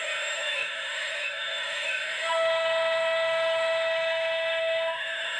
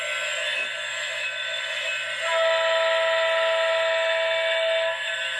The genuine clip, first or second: second